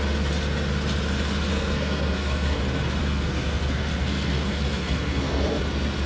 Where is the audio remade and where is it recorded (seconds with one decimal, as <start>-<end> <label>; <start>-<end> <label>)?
0.0-1.5 recorded; 1.5-2.6 remade; 2.6-3.0 recorded; 3.0-5.6 remade; 5.6-6.1 recorded